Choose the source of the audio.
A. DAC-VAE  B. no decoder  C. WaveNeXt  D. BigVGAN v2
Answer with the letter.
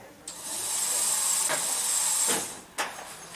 B